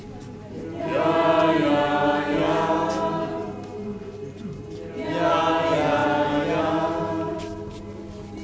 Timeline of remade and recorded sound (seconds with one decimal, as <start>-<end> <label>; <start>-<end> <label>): 0.0-8.4 recorded